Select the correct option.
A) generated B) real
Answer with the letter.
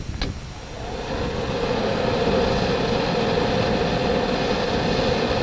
B